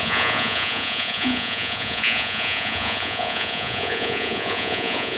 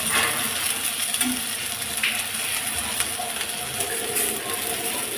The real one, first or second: second